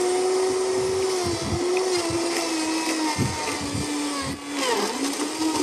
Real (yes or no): yes